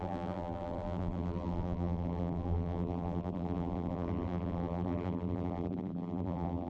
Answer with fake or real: fake